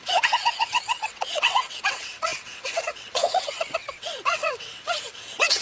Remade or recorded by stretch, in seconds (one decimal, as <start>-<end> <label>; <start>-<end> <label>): 0.0-5.6 remade